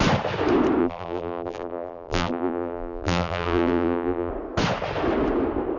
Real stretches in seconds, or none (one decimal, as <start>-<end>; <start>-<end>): 0.0-0.8; 4.3-5.8

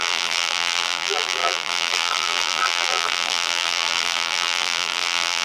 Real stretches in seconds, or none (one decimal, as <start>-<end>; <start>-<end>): none

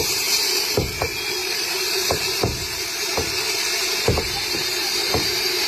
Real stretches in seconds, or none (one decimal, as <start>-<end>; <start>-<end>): none